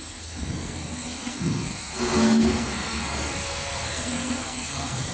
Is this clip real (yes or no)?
no